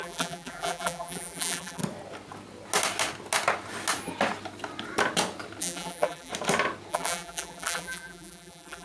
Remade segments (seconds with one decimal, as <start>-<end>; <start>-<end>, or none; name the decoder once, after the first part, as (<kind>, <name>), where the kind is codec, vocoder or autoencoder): 0.0-1.8 (vocoder, BigVGAN v2); 5.6-6.3; 6.9-8.8